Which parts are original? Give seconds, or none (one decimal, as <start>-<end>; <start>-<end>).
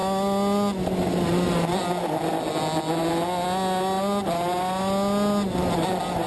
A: 0.0-6.3